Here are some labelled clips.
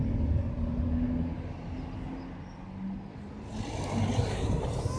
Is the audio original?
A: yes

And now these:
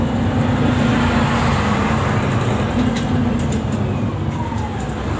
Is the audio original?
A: yes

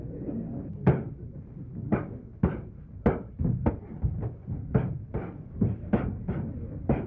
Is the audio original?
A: yes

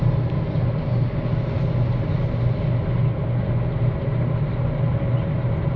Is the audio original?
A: yes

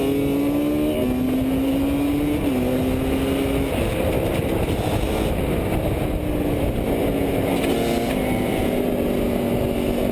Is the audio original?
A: yes